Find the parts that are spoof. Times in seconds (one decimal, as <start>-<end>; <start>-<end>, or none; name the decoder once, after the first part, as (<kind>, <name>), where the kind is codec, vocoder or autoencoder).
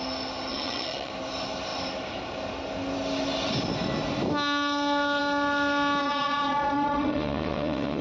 0.5-1.1 (vocoder, Vocos); 6.0-8.0